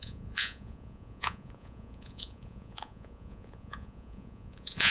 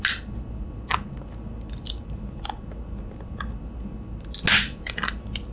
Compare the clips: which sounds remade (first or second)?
first